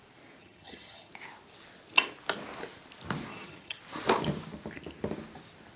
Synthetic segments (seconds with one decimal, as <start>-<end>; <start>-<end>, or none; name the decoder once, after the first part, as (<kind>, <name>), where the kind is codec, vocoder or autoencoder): 0.4-1.1 (vocoder, HiFi-GAN); 3.3-3.8